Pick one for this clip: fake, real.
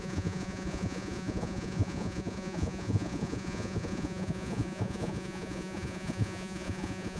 fake